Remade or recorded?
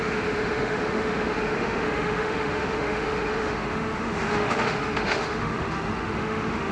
remade